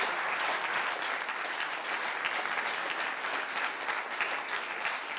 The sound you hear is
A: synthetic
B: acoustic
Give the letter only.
B